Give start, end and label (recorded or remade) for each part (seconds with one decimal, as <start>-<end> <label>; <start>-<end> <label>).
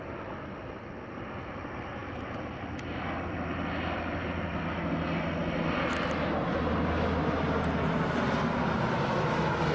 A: 0.0-9.7 recorded